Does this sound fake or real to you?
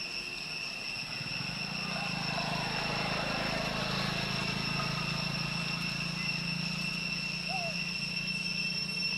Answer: real